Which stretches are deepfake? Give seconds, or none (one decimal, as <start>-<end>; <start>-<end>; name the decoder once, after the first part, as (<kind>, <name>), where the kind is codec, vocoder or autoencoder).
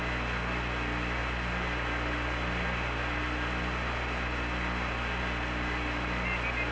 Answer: none